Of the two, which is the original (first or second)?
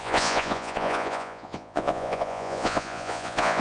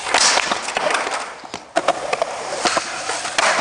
second